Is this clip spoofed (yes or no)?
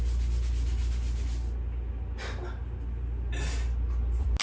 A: no